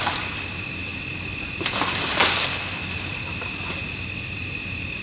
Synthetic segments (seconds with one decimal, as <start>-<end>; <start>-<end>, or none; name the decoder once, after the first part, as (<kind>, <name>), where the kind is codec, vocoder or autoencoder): none